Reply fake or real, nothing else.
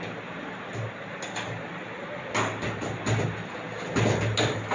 real